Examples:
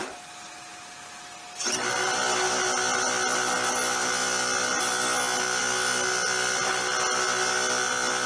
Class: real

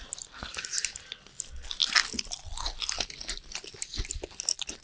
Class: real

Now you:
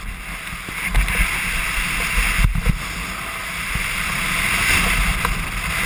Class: real